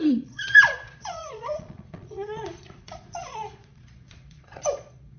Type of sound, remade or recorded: remade